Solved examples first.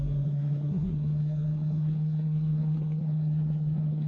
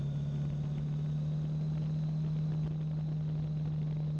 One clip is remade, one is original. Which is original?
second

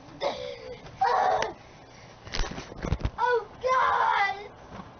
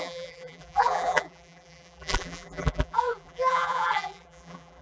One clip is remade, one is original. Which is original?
first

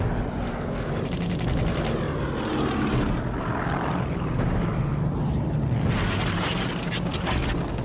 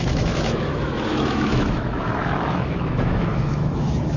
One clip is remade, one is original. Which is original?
first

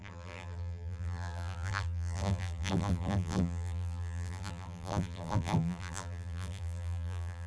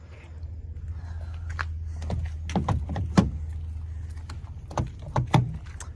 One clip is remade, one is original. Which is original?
second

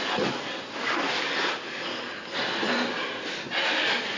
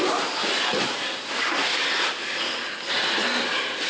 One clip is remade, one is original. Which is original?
first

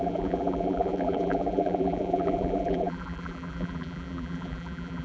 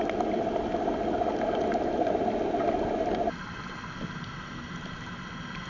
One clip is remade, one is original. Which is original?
second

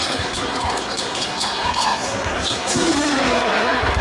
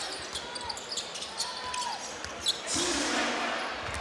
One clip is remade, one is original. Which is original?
second